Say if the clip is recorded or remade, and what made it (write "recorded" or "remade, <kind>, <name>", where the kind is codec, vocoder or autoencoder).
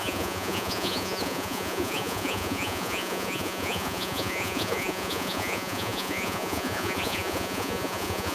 remade, vocoder, Vocos